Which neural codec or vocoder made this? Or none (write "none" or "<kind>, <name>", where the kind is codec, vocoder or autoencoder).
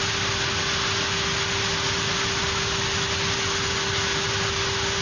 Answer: none